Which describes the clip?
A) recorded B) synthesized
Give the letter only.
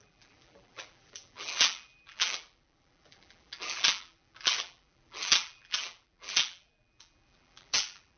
B